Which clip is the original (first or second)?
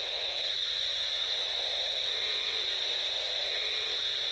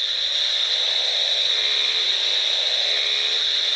second